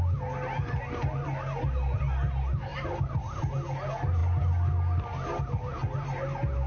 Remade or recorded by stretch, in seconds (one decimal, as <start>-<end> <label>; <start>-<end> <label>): 0.0-2.7 recorded; 2.7-3.4 remade; 3.4-6.7 recorded